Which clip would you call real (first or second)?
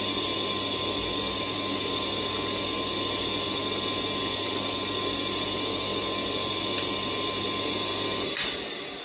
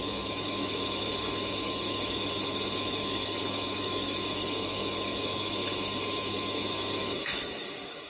first